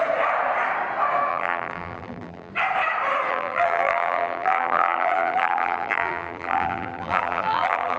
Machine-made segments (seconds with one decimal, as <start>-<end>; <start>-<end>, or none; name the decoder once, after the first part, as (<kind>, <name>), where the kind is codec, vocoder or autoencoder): 1.3-2.5 (vocoder, BigVGAN v2); 3.3-8.0